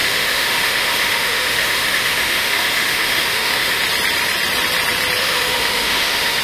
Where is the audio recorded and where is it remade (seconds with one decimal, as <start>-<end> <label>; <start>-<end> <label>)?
0.0-3.8 remade; 3.8-5.2 recorded; 5.2-6.4 remade